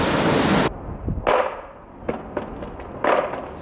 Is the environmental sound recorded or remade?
recorded